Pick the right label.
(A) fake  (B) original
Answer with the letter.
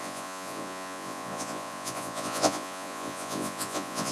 A